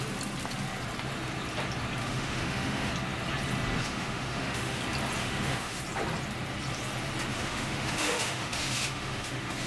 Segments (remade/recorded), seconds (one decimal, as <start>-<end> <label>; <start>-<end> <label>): 0.0-2.0 recorded; 2.0-2.9 remade; 2.9-3.8 recorded; 3.8-4.8 remade; 4.8-5.2 recorded; 5.2-5.8 remade; 5.8-7.3 recorded; 7.3-9.7 remade